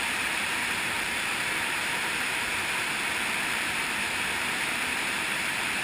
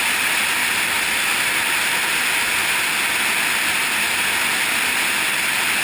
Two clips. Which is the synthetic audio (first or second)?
first